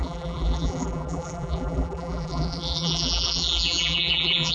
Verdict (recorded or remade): remade